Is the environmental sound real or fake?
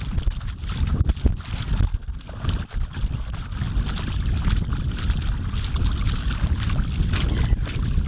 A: real